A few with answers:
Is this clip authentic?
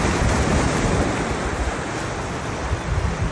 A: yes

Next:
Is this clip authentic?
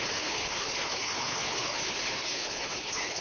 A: no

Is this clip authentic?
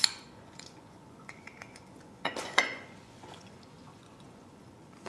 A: no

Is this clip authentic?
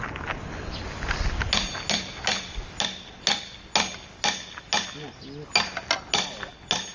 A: yes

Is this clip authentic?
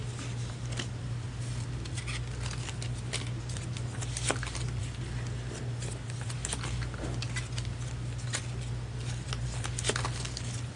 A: yes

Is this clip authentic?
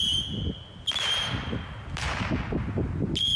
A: yes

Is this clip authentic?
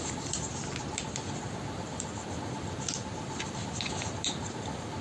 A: yes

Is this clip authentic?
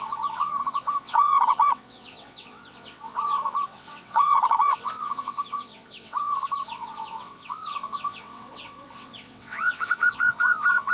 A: no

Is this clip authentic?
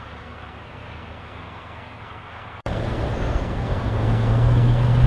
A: no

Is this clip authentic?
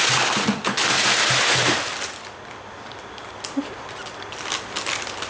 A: yes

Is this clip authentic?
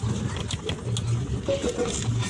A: yes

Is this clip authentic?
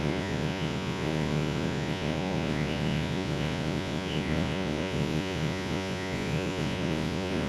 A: no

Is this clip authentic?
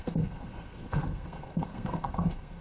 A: no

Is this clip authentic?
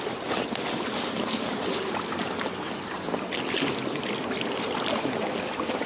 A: yes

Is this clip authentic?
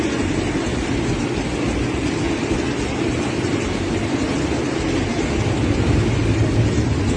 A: yes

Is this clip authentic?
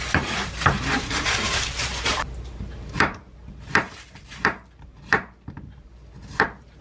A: no